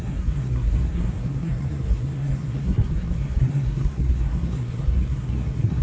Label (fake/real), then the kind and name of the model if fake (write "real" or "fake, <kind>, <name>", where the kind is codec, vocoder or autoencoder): fake, codec, SNAC